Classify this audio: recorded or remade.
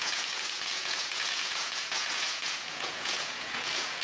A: remade